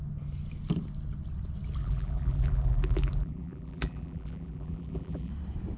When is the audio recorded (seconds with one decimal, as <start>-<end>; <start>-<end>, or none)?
0.0-1.8; 5.3-5.8